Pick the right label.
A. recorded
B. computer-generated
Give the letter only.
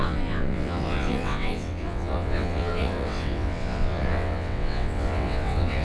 B